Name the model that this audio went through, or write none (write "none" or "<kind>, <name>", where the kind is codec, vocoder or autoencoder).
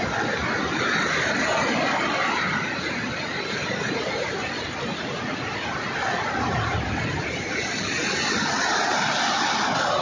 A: none